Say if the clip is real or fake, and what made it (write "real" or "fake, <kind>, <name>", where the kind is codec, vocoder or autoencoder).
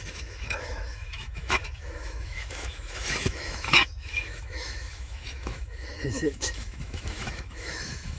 fake, autoencoder, DAC-VAE